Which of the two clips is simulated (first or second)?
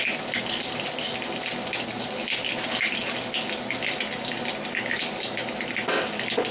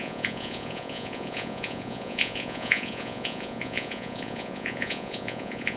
second